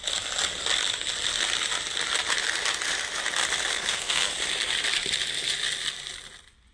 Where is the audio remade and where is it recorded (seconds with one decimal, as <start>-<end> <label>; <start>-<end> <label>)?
0.0-3.7 recorded; 3.7-4.3 remade; 4.3-6.7 recorded